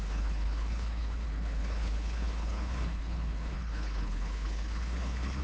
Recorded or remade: remade